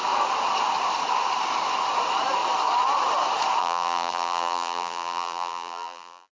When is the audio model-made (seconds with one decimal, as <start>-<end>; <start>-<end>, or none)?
3.6-6.4